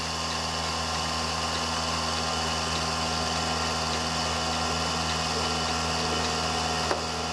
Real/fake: real